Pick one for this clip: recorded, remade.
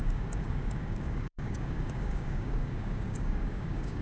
remade